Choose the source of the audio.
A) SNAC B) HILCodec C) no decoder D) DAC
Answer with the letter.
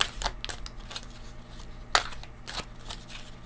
C